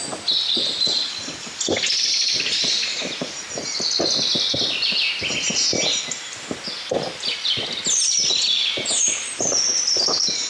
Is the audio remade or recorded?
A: recorded